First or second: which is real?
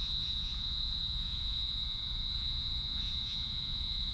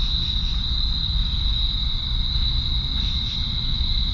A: second